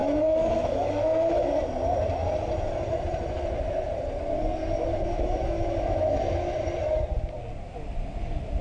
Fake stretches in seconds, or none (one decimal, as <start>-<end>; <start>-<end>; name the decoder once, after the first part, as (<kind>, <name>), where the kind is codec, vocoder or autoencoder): 0.0-1.6 (autoencoder, DAC-VAE); 4.9-6.1